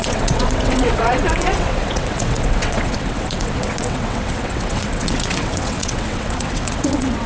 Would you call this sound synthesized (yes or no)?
yes